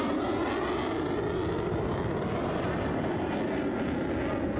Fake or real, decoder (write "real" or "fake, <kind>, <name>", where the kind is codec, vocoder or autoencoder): real